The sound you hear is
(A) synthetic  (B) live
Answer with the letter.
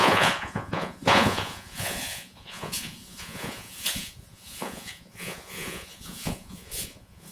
A